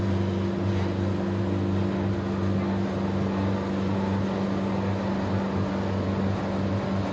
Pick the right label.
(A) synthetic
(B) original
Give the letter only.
B